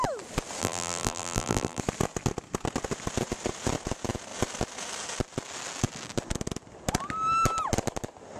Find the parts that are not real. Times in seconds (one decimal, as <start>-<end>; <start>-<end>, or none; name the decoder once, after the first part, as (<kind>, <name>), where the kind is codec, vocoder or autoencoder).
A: 0.6-1.8 (vocoder, BigVGAN v2)